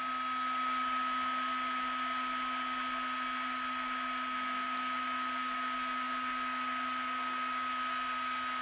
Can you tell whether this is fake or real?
real